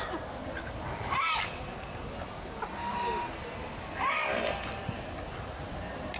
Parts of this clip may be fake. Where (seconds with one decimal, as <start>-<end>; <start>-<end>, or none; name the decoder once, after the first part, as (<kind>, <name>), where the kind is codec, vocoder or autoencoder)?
3.4-4.8 (vocoder, BigVGAN v2)